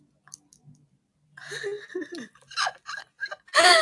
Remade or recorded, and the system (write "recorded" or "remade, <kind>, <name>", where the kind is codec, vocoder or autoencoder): recorded